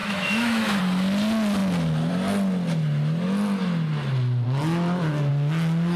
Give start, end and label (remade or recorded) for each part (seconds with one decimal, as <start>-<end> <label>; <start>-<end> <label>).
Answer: 0.0-0.8 remade; 0.8-6.0 recorded